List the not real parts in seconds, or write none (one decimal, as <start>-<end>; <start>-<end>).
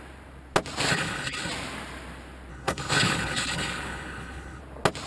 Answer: 0.9-1.5; 2.5-4.6